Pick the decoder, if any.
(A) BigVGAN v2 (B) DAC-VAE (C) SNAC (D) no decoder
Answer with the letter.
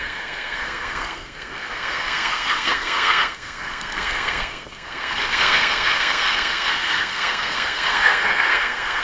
C